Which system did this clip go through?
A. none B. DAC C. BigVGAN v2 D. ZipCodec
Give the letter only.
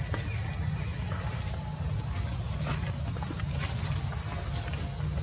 A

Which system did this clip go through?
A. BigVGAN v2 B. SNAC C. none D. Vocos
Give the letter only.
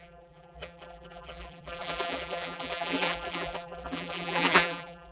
A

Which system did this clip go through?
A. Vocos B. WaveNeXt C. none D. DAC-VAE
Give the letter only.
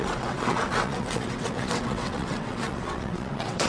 B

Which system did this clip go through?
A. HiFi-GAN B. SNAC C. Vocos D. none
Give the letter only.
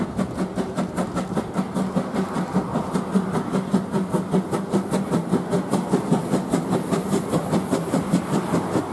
D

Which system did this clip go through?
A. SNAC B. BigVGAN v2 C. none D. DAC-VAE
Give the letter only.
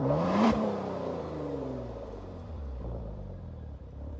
B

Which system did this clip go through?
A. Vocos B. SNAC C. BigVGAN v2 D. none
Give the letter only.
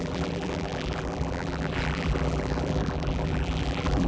C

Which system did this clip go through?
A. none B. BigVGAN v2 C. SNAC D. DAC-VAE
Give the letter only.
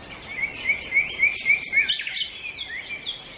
A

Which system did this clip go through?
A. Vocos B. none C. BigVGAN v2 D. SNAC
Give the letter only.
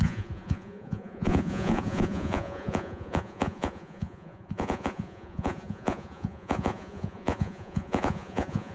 A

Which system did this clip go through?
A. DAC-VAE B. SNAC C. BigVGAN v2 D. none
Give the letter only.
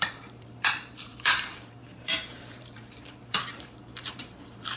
C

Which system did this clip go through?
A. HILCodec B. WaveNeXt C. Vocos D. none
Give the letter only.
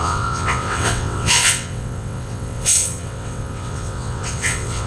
B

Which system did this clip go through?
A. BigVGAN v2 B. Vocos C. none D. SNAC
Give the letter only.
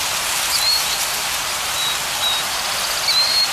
A